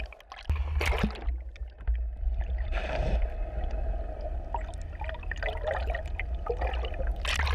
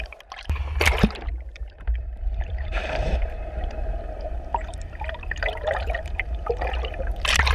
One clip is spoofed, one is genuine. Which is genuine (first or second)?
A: first